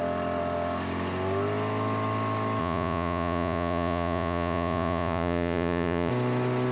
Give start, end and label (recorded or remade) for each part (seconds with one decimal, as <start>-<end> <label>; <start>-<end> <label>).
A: 0.0-2.6 recorded; 2.6-6.1 remade; 6.1-6.7 recorded